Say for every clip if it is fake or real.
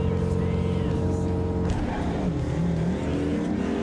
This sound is real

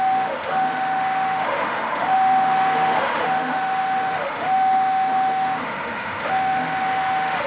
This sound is fake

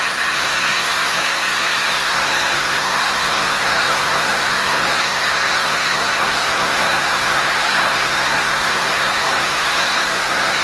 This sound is fake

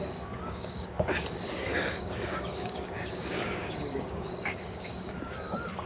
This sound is fake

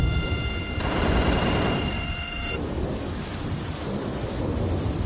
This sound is real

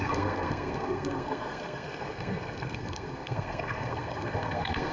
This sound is fake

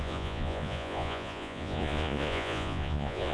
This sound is fake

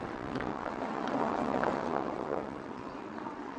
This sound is fake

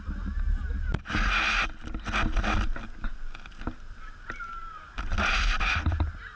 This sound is real